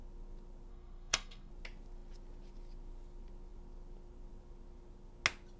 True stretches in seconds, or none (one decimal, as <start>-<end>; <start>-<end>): 0.0-0.7; 1.5-5.6